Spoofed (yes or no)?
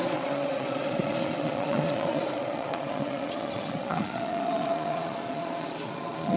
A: yes